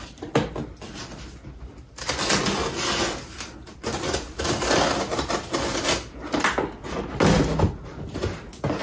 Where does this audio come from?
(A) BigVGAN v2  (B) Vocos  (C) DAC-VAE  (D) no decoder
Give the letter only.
D